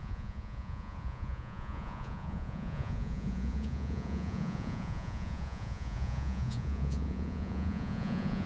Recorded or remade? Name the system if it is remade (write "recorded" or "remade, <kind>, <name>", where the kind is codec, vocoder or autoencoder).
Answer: remade, vocoder, Vocos